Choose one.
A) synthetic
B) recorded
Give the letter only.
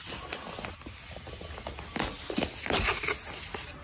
B